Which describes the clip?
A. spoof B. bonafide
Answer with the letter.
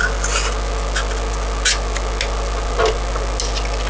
B